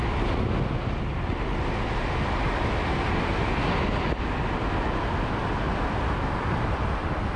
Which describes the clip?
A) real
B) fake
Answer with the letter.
A